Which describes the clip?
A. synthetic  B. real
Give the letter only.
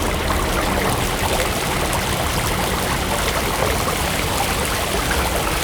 B